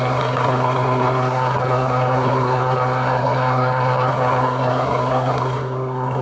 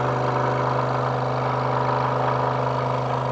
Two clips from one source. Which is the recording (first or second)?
second